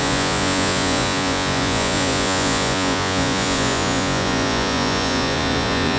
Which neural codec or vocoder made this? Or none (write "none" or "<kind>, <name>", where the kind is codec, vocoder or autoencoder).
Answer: vocoder, Vocos